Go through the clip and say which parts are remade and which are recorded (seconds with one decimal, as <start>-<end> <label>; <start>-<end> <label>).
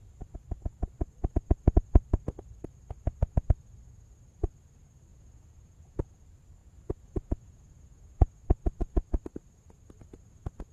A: 0.0-5.1 recorded; 5.1-6.1 remade; 6.1-6.6 recorded; 6.6-8.4 remade; 8.4-10.7 recorded